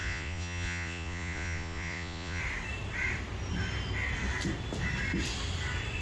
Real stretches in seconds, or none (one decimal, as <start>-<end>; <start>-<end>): 2.4-6.0